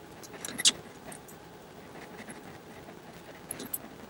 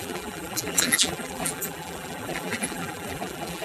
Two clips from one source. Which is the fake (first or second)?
second